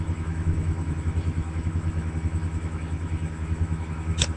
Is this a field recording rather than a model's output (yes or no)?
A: no